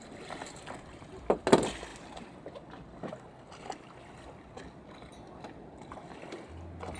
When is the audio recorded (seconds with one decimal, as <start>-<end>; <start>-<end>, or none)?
0.0-7.0